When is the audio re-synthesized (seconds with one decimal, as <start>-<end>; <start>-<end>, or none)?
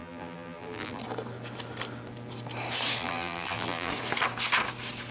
0.0-1.0; 3.0-3.9